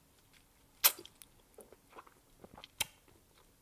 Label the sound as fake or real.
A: real